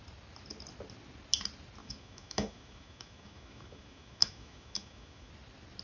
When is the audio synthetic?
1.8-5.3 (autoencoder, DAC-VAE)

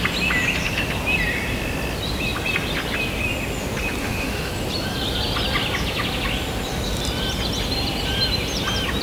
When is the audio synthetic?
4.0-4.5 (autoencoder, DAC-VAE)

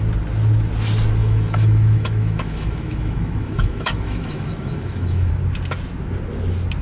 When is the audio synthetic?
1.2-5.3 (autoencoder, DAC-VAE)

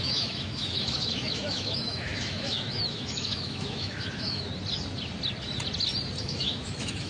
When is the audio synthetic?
0.0-4.5 (autoencoder, DAC-VAE); 6.2-7.1

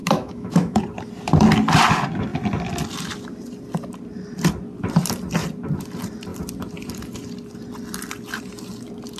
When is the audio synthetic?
0.0-0.8 (autoencoder, DAC-VAE)

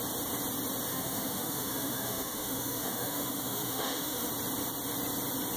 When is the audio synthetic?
0.9-4.3 (autoencoder, DAC-VAE)